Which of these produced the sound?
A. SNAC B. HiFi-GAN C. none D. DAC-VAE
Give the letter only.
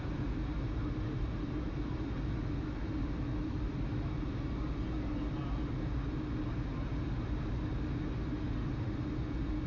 C